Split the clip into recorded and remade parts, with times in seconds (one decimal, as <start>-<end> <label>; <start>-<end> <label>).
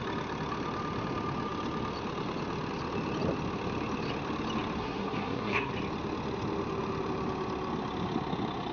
0.0-4.8 recorded; 4.8-5.7 remade; 5.7-8.7 recorded